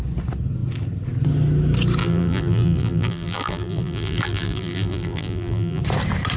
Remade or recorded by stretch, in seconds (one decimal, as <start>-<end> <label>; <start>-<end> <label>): 0.0-2.0 recorded; 2.0-5.8 remade; 5.8-6.4 recorded